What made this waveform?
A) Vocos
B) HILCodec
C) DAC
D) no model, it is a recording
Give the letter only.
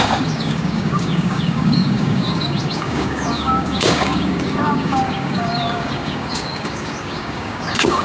C